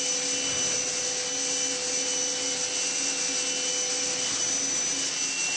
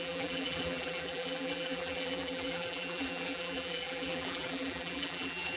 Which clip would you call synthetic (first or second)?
second